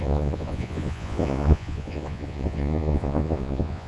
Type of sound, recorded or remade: remade